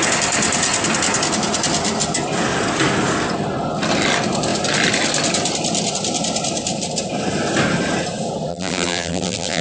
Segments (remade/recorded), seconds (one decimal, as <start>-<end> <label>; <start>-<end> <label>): 0.0-8.5 recorded; 8.5-9.6 remade